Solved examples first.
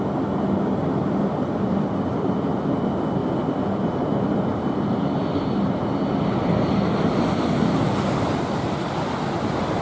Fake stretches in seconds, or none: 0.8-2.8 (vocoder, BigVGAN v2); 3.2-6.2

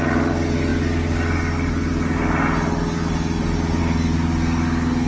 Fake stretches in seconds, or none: none

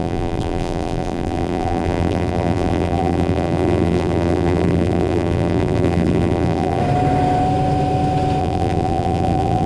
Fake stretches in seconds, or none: 0.0-6.8 (vocoder, BigVGAN v2); 8.4-9.7

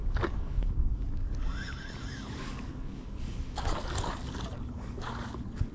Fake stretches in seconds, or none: 0.0-1.3 (codec, DAC); 2.1-5.7

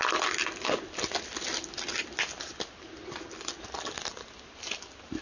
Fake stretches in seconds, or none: none

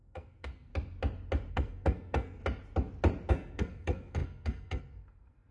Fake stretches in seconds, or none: 0.0-0.7 (codec, SNAC); 1.5-2.4; 3.3-5.5

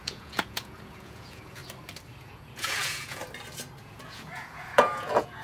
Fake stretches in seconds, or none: 0.0-1.6 (vocoder, Vocos); 2.2-3.2; 3.8-5.4